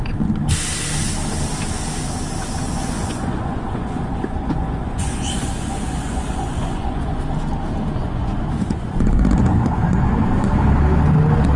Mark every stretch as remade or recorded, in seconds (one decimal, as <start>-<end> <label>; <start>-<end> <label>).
0.0-2.7 recorded; 2.7-7.2 remade; 7.2-8.0 recorded; 8.0-10.2 remade; 10.2-11.6 recorded